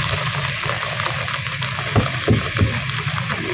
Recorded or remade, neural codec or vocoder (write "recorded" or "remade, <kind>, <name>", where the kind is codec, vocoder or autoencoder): recorded